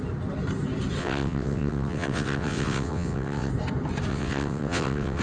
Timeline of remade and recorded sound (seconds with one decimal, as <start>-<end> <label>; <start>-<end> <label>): 0.0-1.0 recorded; 1.0-3.5 remade; 3.5-4.1 recorded; 4.1-5.2 remade